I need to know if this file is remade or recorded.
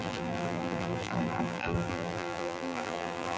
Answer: remade